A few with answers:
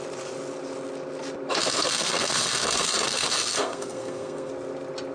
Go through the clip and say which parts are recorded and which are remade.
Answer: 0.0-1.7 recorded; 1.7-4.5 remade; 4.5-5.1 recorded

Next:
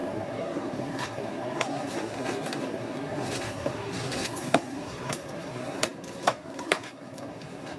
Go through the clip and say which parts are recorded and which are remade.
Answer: 0.0-7.8 remade

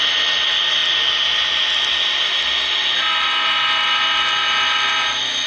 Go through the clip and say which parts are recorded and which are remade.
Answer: 0.0-5.5 recorded

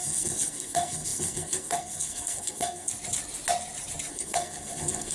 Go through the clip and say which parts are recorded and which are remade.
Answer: 0.0-2.9 remade; 2.9-4.1 recorded; 4.1-5.1 remade

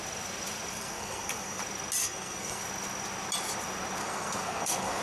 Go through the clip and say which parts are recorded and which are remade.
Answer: 0.0-0.7 recorded; 0.7-1.6 remade; 1.6-2.0 recorded; 2.0-2.6 remade; 2.6-4.0 recorded; 4.0-5.0 remade

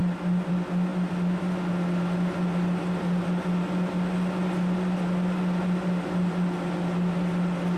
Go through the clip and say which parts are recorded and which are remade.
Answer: 0.0-7.8 recorded

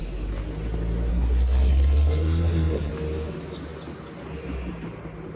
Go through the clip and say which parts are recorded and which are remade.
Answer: 0.0-1.1 recorded; 1.1-2.9 remade; 2.9-5.4 recorded

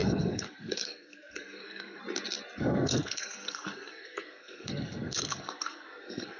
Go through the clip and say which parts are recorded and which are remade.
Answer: 0.0-2.0 remade; 2.0-2.6 recorded; 2.6-6.4 remade